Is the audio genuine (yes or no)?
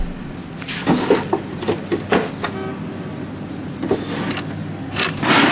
yes